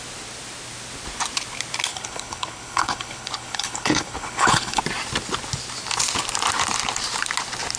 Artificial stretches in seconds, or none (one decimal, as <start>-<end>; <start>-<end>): 1.9-4.8